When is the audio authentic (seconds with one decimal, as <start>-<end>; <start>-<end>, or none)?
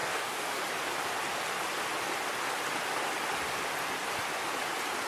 0.6-5.1